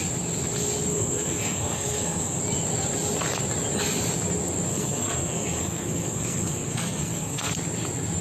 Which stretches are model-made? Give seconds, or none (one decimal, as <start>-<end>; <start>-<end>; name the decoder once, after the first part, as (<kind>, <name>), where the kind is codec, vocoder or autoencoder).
0.9-2.4 (codec, SNAC); 4.7-7.5